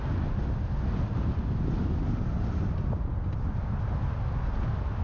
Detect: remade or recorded recorded